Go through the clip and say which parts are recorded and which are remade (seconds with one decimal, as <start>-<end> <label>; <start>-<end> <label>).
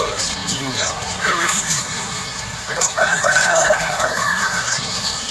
0.0-5.3 remade